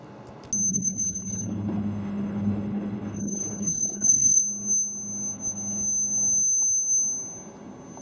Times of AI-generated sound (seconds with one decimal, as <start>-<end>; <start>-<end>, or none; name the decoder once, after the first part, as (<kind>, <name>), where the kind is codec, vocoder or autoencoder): 0.7-4.4 (codec, HILCodec)